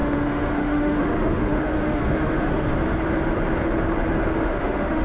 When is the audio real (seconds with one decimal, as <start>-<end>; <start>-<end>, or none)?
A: 2.7-4.4